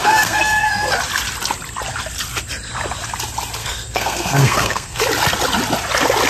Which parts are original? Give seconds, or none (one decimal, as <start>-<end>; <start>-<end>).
0.9-3.6; 5.0-6.3